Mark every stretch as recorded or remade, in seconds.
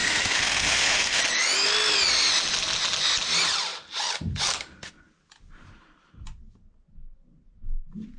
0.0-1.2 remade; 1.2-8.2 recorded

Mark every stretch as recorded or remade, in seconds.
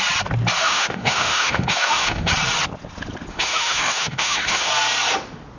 0.0-0.6 recorded; 0.6-2.3 remade; 2.3-3.3 recorded; 3.3-4.7 remade; 4.7-5.6 recorded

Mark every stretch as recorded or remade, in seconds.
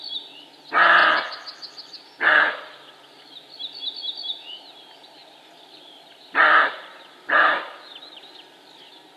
0.0-9.2 recorded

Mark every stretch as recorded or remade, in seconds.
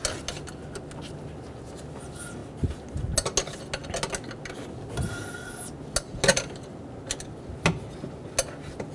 0.0-8.9 recorded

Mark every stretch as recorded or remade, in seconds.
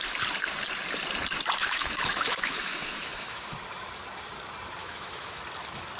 0.0-1.6 recorded; 1.6-3.5 remade; 3.5-4.8 recorded; 4.8-5.4 remade; 5.4-6.0 recorded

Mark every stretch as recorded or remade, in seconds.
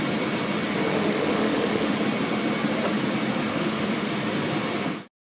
0.0-0.9 recorded; 0.9-1.9 remade; 1.9-3.5 recorded; 3.5-4.1 remade; 4.1-5.2 recorded